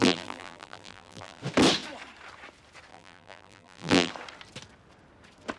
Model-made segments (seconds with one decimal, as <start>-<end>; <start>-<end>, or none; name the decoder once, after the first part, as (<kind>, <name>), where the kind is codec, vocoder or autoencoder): 0.0-1.4 (vocoder, BigVGAN v2); 2.9-4.1